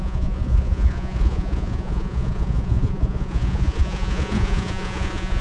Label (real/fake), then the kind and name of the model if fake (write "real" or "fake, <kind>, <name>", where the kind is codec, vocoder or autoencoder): fake, vocoder, Vocos